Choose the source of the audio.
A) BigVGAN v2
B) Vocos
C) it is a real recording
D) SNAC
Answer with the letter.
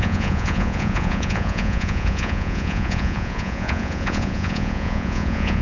B